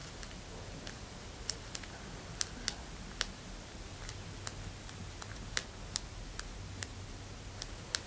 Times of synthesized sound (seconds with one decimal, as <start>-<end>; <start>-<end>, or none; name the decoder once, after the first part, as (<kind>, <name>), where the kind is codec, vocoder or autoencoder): 4.9-5.6 (vocoder, BigVGAN v2)